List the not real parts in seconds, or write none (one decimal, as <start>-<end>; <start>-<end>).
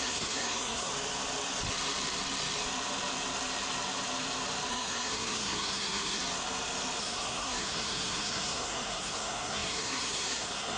0.0-0.9; 4.7-6.2; 7.0-10.8